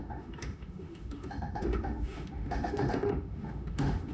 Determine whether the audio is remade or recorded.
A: remade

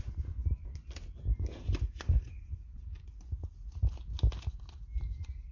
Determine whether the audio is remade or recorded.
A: recorded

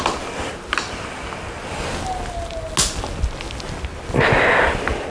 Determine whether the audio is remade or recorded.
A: recorded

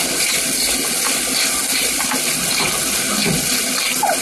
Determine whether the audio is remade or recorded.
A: recorded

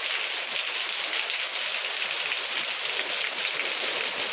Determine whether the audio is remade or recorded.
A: recorded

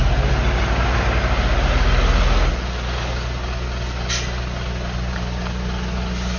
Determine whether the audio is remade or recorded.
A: recorded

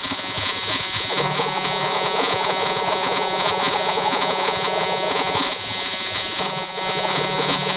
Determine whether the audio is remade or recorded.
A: remade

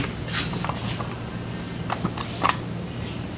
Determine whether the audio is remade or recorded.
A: recorded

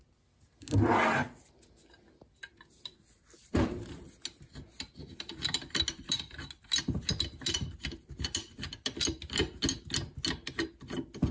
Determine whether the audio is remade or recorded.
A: recorded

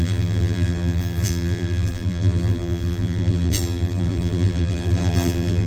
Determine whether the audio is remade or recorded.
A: remade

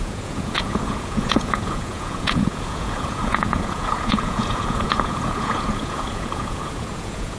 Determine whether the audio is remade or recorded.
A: remade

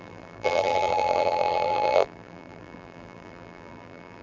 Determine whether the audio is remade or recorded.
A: remade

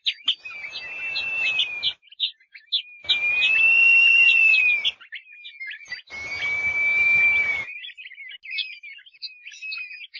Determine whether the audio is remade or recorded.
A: recorded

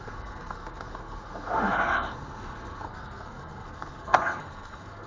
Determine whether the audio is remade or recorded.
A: remade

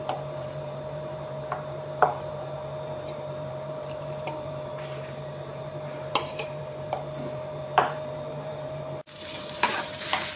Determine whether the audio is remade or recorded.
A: remade